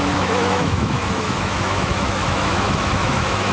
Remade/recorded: remade